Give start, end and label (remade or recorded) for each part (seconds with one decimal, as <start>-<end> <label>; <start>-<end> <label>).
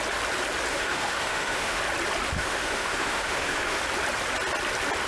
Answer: 0.0-0.7 recorded; 0.7-1.8 remade; 1.8-2.4 recorded; 2.4-3.8 remade; 3.8-5.1 recorded